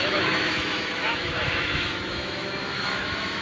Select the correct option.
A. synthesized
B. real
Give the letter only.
A